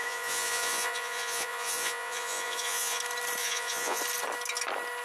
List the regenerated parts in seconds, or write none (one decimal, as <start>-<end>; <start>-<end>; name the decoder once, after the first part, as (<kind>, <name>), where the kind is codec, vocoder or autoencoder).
0.0-3.0 (vocoder, Vocos); 3.4-4.0